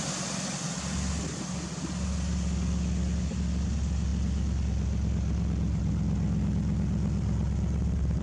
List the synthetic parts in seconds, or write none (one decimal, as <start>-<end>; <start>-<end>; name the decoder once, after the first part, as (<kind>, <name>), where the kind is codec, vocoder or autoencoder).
none